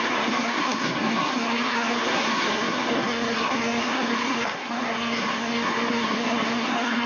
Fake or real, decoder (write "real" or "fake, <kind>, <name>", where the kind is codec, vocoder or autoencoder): fake, codec, SNAC